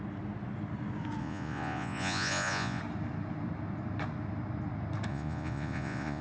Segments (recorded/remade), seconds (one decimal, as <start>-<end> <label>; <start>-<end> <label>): 0.0-1.2 recorded; 1.2-2.8 remade; 2.8-5.1 recorded; 5.1-6.2 remade